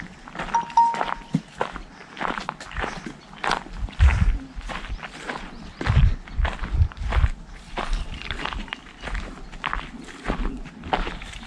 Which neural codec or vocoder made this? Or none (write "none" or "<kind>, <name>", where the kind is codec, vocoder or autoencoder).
none